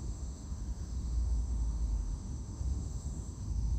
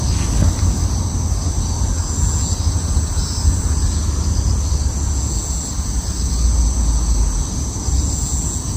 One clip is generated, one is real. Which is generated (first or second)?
first